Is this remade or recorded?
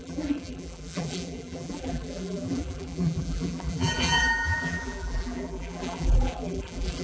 remade